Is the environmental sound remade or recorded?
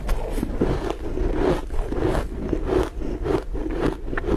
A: recorded